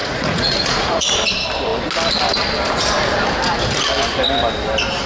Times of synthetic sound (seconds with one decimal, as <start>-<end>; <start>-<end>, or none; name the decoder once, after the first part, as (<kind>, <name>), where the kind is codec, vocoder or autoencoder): 0.0-1.1 (vocoder, Vocos)